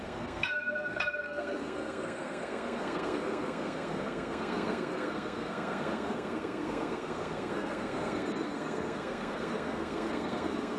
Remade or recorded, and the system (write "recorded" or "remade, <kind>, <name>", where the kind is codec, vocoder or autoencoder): remade, codec, SNAC